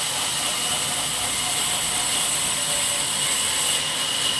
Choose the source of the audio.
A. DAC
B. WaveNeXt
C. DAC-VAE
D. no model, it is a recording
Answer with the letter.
D